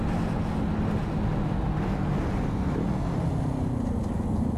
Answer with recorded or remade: recorded